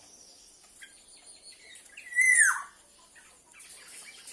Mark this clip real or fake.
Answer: real